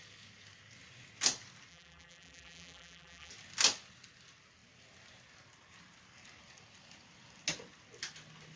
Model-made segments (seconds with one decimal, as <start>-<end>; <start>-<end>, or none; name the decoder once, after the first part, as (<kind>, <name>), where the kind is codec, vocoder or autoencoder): 1.7-3.3 (vocoder, BigVGAN v2)